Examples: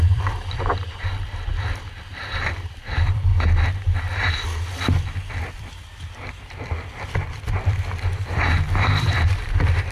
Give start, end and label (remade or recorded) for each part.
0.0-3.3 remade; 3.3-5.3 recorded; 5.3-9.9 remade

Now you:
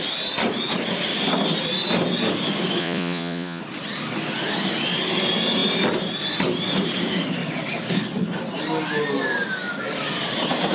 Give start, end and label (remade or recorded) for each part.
0.0-2.8 recorded; 2.8-3.6 remade; 3.6-10.7 recorded

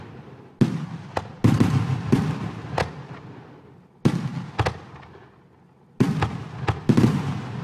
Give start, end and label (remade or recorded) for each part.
0.0-7.6 recorded